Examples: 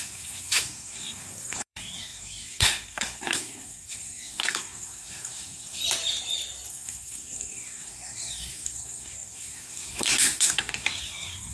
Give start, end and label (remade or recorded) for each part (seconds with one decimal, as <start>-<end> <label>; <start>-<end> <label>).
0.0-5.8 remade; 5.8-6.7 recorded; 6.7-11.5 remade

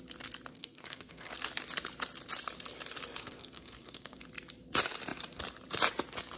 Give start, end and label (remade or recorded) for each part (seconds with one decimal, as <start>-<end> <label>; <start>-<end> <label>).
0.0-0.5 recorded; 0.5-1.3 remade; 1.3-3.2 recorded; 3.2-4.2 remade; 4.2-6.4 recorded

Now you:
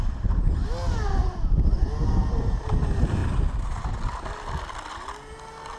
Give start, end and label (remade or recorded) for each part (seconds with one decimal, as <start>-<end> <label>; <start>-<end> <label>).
0.0-1.2 recorded; 1.2-2.7 remade; 2.7-5.8 recorded

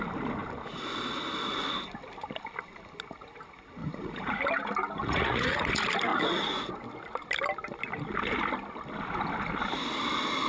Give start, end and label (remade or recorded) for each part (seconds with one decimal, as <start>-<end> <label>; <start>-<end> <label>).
0.0-3.8 recorded; 3.8-4.4 remade; 4.4-5.0 recorded; 5.0-5.6 remade; 5.6-6.1 recorded; 6.1-6.7 remade; 6.7-10.5 recorded

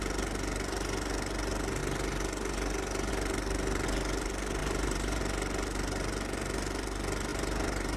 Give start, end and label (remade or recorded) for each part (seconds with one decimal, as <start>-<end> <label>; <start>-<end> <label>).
0.0-4.6 recorded; 4.6-5.2 remade; 5.2-7.3 recorded; 7.3-8.0 remade